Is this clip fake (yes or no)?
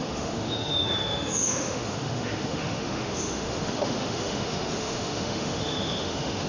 yes